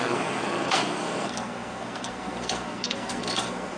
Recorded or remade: remade